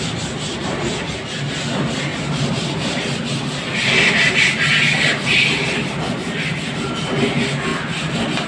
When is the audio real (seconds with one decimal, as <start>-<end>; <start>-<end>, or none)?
0.0-8.5